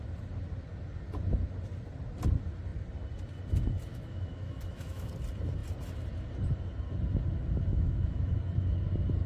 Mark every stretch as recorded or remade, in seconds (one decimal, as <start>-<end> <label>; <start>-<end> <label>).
0.0-3.9 recorded; 3.9-5.1 remade; 5.1-7.7 recorded; 7.7-8.4 remade; 8.4-9.3 recorded